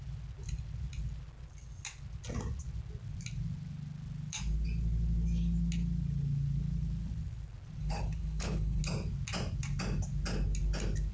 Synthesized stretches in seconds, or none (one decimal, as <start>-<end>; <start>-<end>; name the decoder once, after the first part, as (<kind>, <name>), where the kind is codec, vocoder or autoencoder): 7.8-8.8 (codec, HILCodec)